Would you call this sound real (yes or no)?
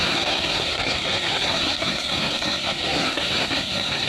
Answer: no